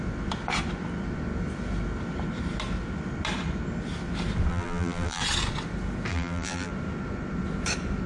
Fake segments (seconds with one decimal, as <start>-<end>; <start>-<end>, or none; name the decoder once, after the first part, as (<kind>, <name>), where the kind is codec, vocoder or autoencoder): 4.5-5.2 (vocoder, BigVGAN v2); 6.1-6.7